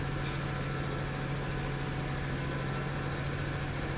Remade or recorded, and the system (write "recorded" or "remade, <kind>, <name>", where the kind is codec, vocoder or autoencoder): recorded